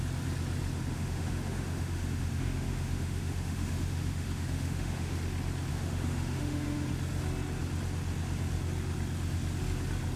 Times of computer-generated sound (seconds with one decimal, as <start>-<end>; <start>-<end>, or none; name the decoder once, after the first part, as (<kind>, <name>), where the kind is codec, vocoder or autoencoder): 0.9-5.2 (autoencoder, DAC-VAE); 5.7-6.9